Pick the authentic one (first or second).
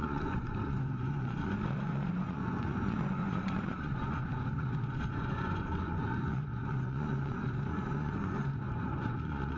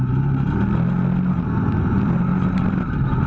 second